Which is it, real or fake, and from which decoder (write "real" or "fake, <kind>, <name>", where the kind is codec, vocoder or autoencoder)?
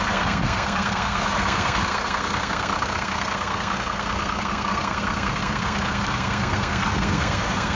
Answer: fake, codec, SNAC